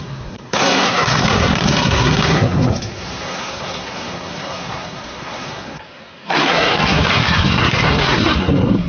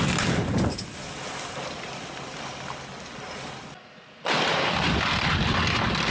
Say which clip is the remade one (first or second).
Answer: first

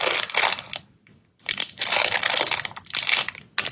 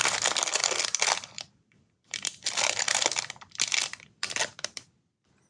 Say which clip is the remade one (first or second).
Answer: second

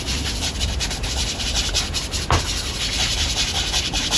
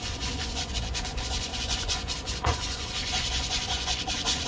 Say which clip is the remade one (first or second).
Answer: second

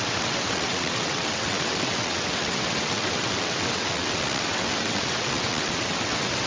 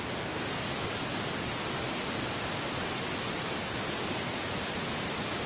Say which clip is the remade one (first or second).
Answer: first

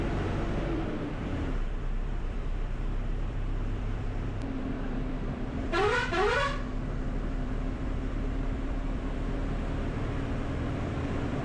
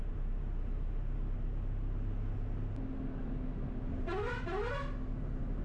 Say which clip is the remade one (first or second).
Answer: first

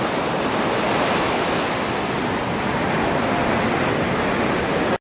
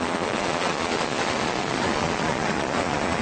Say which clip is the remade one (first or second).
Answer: second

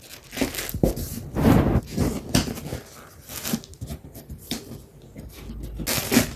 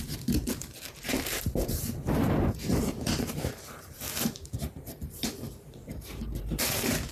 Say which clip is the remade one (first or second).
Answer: second